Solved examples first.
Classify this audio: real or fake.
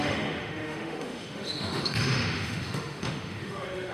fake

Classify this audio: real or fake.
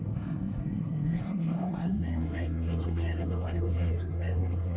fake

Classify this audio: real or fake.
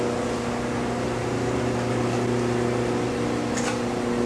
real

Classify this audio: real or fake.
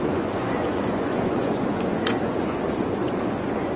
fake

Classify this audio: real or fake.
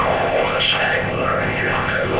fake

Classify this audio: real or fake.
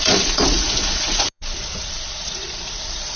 fake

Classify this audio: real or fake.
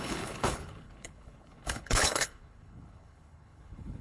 fake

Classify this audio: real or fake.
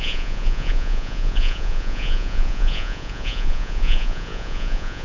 fake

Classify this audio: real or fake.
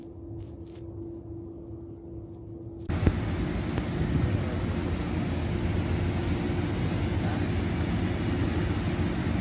real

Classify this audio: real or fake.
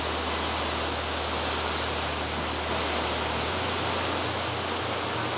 real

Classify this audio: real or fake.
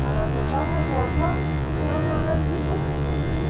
fake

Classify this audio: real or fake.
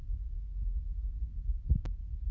real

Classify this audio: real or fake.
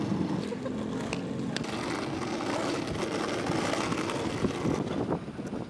real